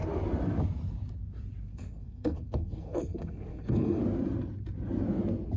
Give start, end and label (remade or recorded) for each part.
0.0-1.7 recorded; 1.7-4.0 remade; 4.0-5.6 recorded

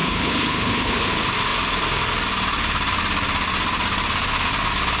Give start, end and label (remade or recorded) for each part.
0.0-1.1 remade; 1.1-5.0 recorded

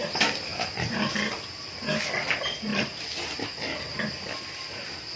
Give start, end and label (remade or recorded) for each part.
0.0-5.2 recorded